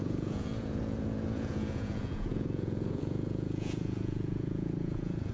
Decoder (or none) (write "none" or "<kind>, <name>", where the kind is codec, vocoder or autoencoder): vocoder, Vocos